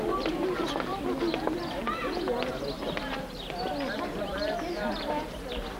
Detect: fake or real real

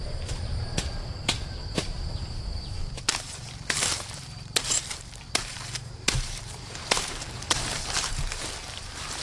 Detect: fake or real fake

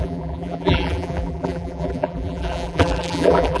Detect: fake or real fake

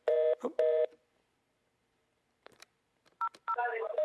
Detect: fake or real fake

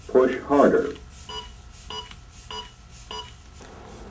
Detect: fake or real real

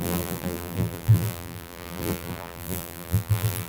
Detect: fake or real fake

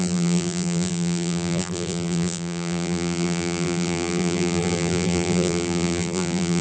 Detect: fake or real fake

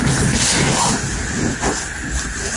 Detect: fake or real real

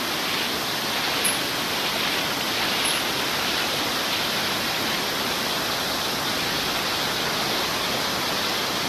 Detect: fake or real real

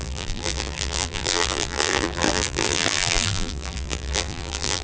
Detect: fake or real fake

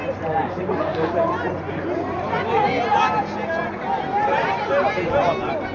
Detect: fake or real real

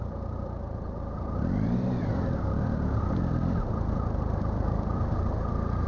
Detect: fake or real fake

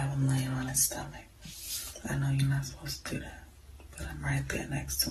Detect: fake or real real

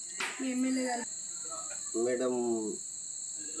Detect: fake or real real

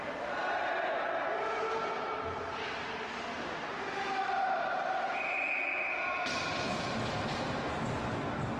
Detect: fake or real real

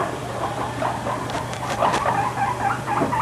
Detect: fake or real fake